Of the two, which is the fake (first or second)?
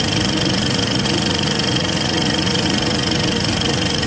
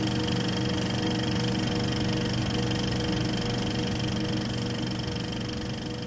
first